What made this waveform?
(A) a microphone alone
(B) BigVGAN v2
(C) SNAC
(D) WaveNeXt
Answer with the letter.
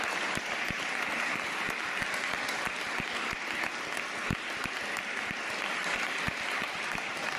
A